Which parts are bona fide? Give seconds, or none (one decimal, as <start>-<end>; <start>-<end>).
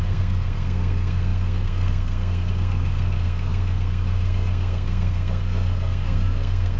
none